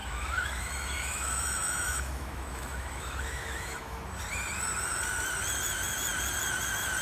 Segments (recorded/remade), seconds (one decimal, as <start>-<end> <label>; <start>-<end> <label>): 0.0-4.0 remade; 4.0-7.0 recorded